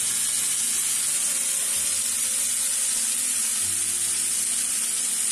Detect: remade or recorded recorded